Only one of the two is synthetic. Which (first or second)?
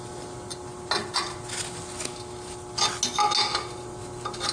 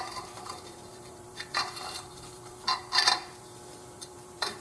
second